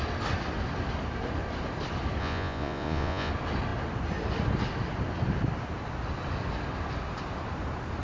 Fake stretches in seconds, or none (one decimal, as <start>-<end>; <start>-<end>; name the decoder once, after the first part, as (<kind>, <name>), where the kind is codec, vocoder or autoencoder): 2.2-3.3 (vocoder, Vocos)